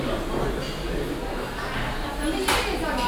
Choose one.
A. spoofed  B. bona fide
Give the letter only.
B